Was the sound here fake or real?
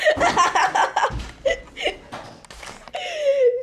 real